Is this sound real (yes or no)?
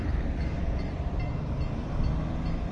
no